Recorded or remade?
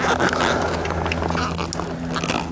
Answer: recorded